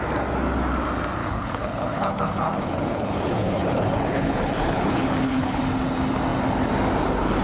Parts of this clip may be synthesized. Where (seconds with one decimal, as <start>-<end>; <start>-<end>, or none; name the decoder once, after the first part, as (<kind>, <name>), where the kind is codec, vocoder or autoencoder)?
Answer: 1.2-5.6 (codec, HILCodec)